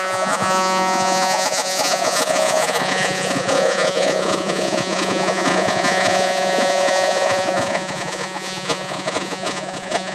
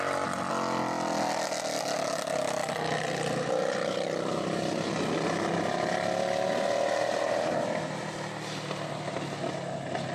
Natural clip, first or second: second